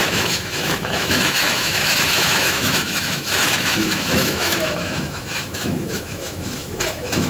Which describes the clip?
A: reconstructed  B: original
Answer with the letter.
A